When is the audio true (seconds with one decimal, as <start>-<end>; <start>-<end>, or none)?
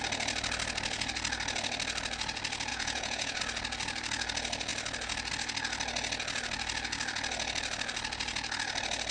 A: 0.0-2.7; 3.4-9.1